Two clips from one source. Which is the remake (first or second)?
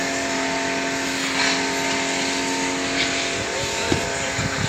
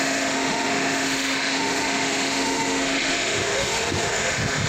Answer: second